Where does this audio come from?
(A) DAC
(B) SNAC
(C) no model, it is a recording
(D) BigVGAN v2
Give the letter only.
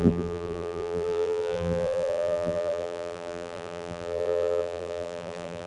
D